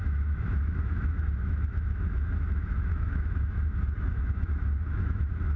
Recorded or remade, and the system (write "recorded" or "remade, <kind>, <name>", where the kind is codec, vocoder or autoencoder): remade, autoencoder, DAC-VAE